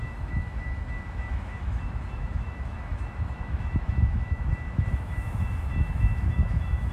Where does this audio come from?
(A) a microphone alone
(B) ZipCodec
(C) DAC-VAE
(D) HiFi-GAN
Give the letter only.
C